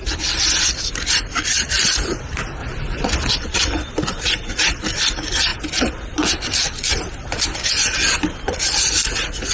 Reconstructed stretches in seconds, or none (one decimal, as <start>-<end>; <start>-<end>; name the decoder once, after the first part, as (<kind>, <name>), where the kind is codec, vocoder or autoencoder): 0.0-2.6 (vocoder, BigVGAN v2); 3.3-5.5; 6.9-9.5